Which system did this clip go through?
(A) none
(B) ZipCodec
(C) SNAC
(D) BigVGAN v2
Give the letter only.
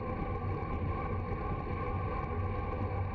A